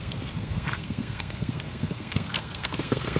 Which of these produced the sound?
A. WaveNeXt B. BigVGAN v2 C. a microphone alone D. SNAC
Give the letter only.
D